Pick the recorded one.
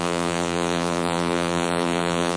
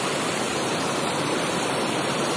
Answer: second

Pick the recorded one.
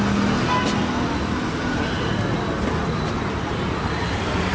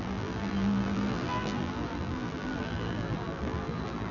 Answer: first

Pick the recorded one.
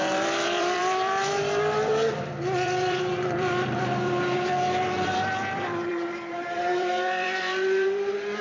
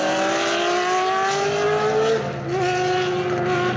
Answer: second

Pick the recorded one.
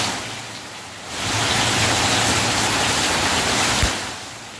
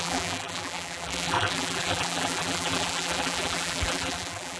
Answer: first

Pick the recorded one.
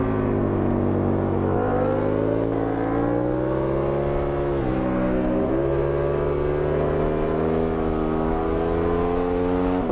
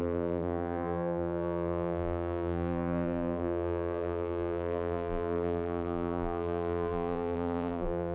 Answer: first